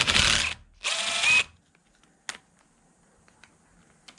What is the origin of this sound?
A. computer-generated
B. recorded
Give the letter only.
B